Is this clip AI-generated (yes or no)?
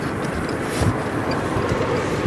yes